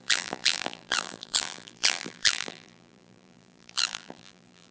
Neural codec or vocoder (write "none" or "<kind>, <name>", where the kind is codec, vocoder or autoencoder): vocoder, BigVGAN v2